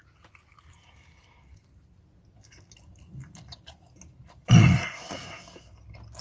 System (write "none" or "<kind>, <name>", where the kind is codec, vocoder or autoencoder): none